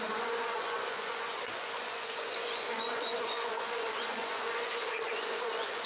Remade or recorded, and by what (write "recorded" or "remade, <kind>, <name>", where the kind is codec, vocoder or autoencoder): remade, vocoder, Vocos